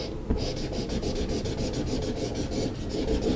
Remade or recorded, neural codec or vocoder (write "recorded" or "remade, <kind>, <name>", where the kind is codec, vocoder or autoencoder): recorded